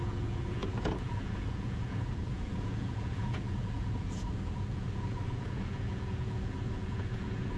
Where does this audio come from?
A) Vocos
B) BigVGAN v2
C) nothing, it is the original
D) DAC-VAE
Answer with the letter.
A